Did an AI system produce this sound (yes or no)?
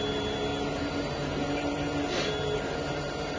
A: no